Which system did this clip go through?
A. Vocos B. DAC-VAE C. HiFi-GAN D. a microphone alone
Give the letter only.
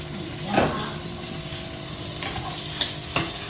D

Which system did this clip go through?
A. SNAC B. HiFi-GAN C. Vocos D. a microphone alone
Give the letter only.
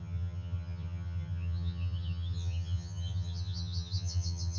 B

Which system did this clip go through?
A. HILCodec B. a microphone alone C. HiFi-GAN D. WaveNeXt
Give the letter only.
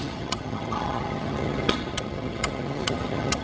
C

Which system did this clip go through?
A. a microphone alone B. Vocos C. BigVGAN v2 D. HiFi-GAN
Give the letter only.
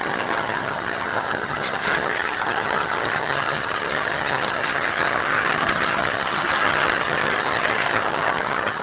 D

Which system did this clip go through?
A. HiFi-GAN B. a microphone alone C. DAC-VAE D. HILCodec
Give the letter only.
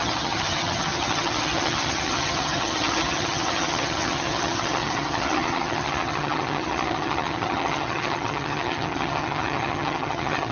A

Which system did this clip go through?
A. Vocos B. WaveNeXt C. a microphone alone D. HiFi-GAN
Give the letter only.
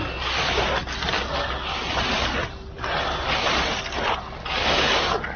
C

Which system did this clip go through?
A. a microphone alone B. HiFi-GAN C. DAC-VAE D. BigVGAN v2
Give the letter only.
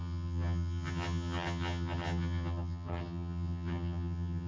B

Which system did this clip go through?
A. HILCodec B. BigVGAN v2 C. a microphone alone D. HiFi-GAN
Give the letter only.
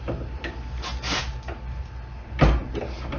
C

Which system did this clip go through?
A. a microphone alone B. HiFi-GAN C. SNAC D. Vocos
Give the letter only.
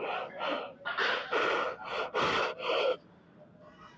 A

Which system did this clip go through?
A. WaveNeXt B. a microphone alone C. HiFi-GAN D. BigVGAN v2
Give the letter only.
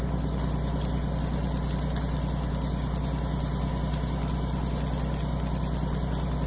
B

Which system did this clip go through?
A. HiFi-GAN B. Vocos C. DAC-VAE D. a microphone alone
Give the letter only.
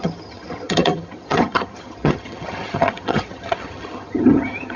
A